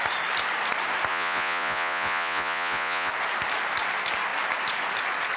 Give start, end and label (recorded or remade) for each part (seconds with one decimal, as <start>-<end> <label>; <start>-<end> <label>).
0.0-1.1 recorded; 1.1-3.1 remade; 3.1-5.4 recorded